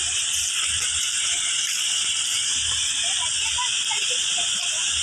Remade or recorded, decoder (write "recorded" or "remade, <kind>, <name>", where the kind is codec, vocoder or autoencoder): recorded